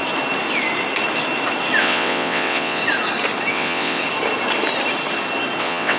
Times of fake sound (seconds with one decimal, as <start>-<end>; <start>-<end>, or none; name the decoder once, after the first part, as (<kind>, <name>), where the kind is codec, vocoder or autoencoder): 1.8-2.8 (vocoder, WaveNeXt); 3.5-4.0; 5.6-6.0